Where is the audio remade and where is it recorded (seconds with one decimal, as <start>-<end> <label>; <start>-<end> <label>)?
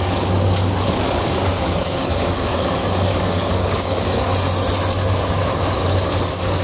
0.0-4.3 remade; 4.3-5.1 recorded; 5.1-6.6 remade